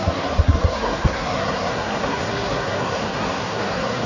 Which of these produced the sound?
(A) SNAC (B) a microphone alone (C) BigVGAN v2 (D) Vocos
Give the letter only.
A